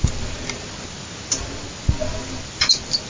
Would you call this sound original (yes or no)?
yes